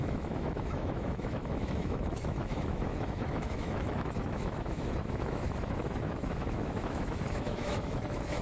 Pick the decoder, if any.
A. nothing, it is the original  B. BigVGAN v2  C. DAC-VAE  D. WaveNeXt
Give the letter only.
C